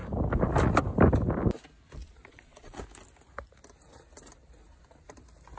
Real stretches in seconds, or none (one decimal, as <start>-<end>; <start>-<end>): 0.0-2.0; 2.8-5.6